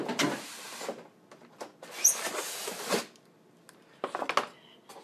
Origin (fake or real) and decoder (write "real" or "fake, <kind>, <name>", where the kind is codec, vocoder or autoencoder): real